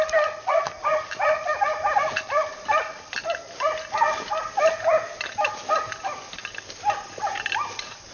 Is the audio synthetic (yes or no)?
no